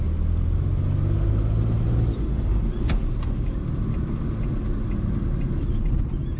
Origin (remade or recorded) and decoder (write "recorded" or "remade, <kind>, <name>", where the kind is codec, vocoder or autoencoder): recorded